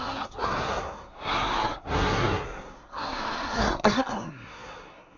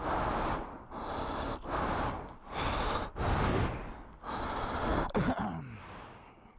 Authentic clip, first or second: second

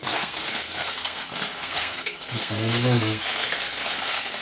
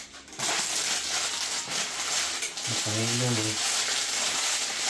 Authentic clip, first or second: second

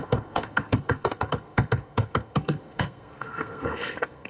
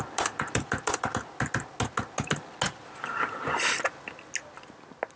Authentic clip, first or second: second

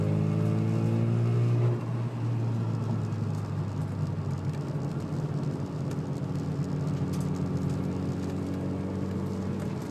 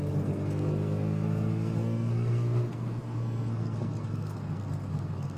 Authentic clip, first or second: first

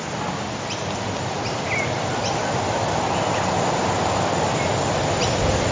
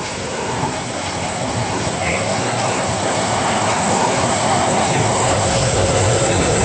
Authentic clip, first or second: first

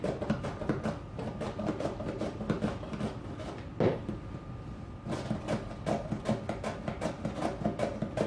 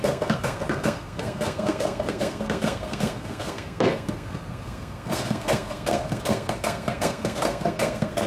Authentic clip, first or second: first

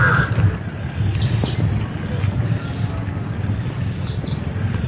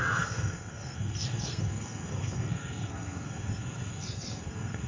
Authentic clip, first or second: first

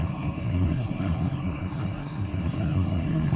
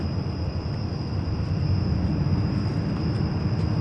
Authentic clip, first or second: second